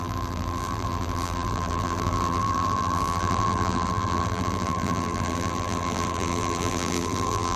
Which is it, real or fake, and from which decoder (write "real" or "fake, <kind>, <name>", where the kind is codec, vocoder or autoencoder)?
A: fake, vocoder, BigVGAN v2